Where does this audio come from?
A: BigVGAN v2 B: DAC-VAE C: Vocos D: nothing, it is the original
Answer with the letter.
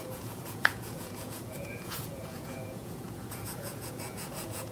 C